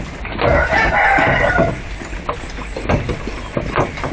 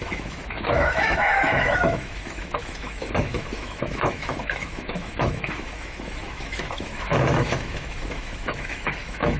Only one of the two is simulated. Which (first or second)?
second